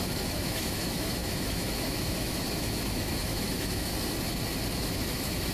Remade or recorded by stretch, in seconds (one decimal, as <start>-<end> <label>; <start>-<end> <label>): 0.0-3.9 remade; 3.9-4.9 recorded; 4.9-5.5 remade